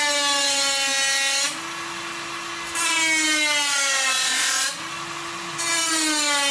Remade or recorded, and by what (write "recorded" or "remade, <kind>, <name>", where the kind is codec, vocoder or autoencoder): recorded